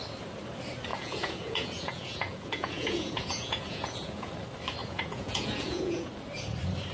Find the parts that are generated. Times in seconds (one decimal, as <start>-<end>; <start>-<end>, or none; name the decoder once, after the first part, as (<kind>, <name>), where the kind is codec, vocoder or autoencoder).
0.9-4.3 (vocoder, Vocos); 4.8-6.1